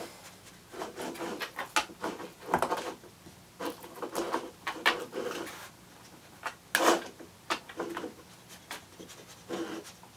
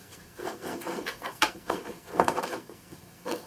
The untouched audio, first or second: first